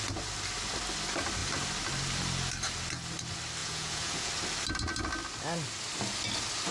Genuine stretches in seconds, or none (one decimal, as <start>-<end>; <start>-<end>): 0.0-3.6; 4.3-6.7